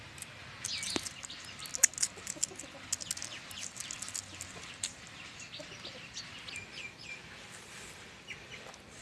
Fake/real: real